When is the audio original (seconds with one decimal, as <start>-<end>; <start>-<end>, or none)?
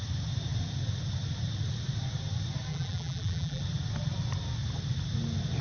0.0-2.7; 3.6-5.6